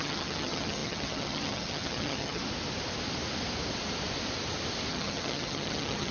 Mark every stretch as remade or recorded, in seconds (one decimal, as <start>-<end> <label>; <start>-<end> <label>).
0.0-2.4 remade; 2.4-4.9 recorded; 4.9-6.1 remade